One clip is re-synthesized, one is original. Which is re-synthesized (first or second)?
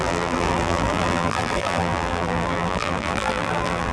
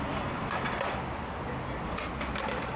first